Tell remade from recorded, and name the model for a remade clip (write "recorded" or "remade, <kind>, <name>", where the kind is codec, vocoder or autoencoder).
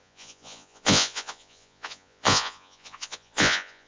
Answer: remade, vocoder, Vocos